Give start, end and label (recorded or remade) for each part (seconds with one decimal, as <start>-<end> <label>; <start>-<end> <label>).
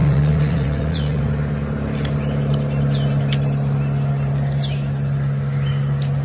0.0-1.2 remade; 1.2-6.2 recorded